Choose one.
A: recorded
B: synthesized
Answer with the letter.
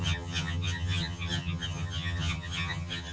B